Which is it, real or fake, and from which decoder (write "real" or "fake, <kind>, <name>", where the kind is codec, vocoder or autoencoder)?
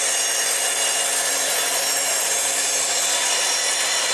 real